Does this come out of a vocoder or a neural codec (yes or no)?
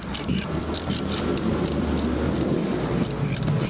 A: no